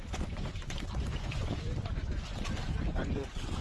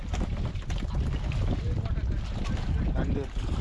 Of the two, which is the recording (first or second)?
second